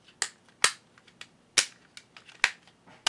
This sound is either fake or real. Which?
real